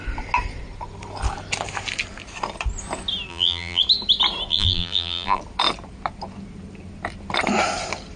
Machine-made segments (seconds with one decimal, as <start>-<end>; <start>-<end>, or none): 3.3-3.8; 4.5-5.4